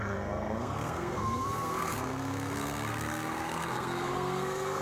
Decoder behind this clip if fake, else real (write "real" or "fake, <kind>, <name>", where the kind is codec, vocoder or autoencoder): fake, codec, SNAC